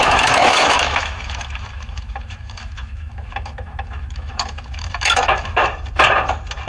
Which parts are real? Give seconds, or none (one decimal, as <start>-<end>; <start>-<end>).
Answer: 5.6-6.7